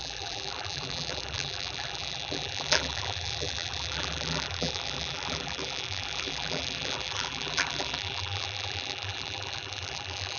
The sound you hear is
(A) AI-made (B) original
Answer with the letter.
A